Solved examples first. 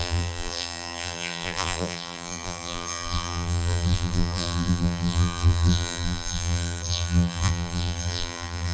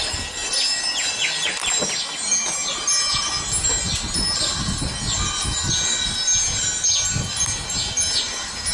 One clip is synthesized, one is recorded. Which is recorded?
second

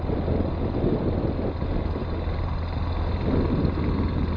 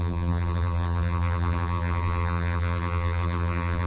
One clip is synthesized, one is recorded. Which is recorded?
first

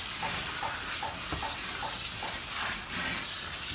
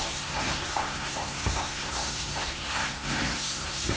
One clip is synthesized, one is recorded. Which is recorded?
first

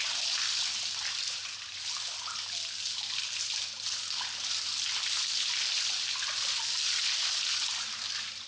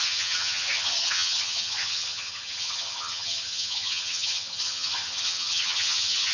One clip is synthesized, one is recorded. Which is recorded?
first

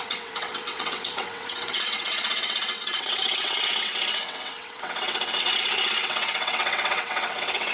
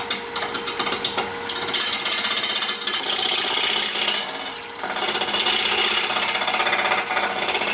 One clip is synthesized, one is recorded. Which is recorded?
second